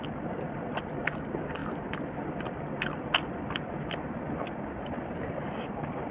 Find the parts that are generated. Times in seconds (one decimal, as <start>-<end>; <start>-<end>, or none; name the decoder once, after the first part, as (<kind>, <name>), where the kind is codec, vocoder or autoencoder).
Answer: none